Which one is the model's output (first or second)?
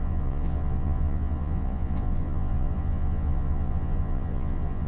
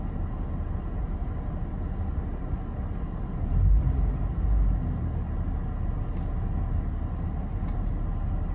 first